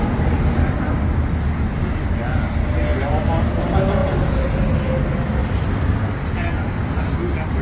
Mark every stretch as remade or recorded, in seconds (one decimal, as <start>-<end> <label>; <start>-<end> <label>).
0.0-7.6 recorded